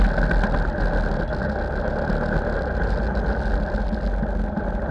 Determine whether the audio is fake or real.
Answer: real